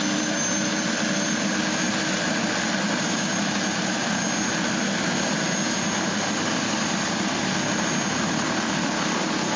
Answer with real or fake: real